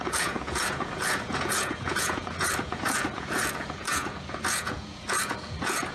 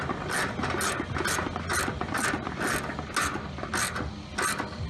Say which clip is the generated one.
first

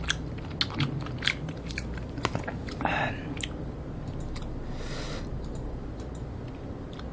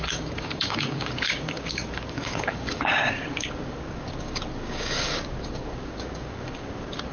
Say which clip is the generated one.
second